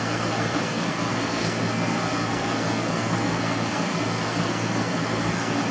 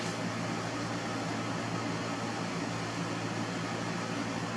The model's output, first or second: first